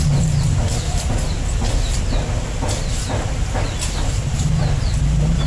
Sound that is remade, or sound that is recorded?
recorded